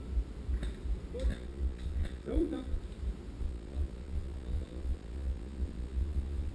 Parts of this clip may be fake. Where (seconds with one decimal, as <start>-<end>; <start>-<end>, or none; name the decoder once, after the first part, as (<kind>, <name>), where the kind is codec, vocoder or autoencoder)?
1.3-2.8 (vocoder, Vocos); 3.4-6.5